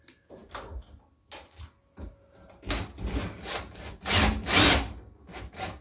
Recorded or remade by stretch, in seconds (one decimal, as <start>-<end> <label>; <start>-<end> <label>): 0.0-5.8 recorded

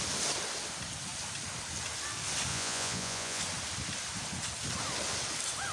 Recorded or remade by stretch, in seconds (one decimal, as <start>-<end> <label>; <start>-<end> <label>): 0.0-2.5 recorded; 2.5-3.4 remade; 3.4-5.7 recorded

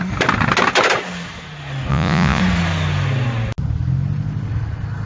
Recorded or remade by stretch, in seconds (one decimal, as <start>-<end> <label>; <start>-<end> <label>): 0.0-1.9 recorded; 1.9-2.4 remade; 2.4-5.1 recorded

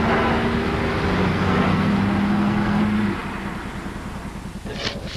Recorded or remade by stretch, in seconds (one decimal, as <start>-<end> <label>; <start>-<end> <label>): 0.0-1.3 recorded; 1.3-1.9 remade; 1.9-2.3 recorded; 2.3-2.8 remade; 2.8-5.2 recorded

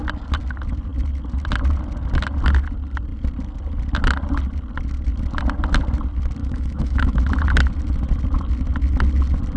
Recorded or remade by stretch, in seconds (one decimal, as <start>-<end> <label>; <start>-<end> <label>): 0.0-6.4 recorded; 6.4-7.2 remade; 7.2-9.6 recorded

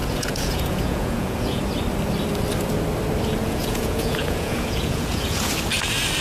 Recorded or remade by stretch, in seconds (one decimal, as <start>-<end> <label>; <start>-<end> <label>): 0.0-1.6 remade; 1.6-3.4 recorded; 3.4-5.5 remade; 5.5-6.2 recorded

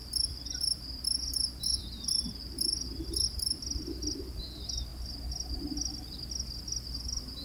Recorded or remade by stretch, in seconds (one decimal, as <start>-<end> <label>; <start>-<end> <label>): 0.0-4.4 remade; 4.4-7.4 recorded